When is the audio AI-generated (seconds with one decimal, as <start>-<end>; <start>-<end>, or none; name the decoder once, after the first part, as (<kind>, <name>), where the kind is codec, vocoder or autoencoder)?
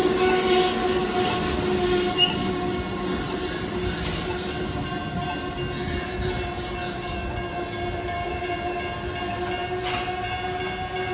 none